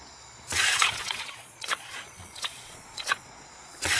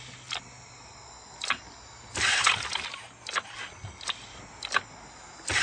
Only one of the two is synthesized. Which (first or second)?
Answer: first